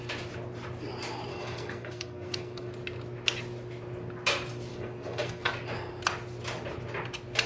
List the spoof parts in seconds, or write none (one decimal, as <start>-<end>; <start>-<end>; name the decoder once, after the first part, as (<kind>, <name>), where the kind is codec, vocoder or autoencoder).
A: 1.3-2.7 (codec, SNAC); 4.7-5.5